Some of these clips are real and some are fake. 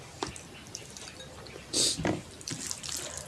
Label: fake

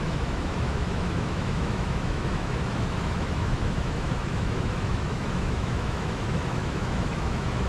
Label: fake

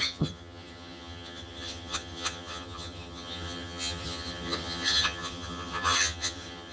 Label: fake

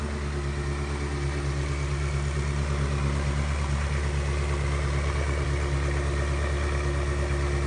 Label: real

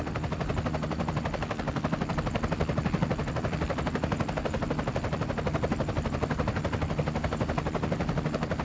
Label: real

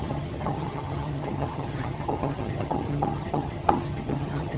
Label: fake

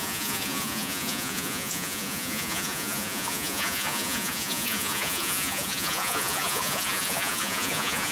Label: fake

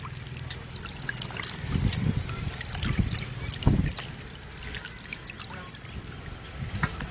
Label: real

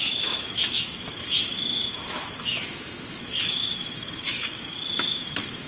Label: fake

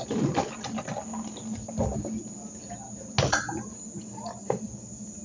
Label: real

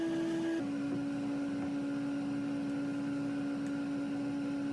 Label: real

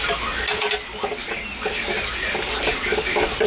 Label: real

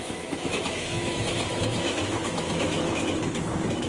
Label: fake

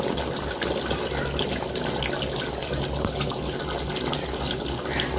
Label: real